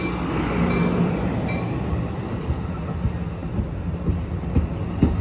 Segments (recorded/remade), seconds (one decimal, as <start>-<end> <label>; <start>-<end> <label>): 0.0-5.2 recorded